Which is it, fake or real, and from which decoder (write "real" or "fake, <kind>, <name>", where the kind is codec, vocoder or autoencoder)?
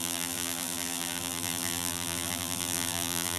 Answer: fake, vocoder, BigVGAN v2